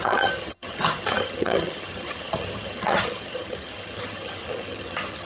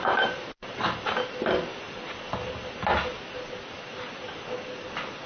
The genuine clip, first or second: second